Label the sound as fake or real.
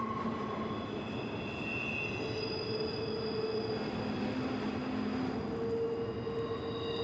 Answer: real